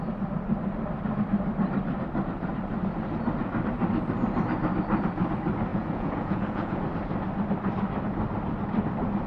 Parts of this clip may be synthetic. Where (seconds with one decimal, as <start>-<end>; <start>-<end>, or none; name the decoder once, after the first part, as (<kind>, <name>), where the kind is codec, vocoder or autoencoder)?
5.7-6.8 (vocoder, Vocos)